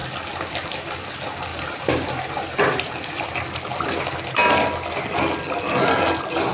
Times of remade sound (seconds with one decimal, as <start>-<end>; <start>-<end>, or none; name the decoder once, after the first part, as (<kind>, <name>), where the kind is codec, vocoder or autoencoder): 1.5-3.4 (vocoder, BigVGAN v2)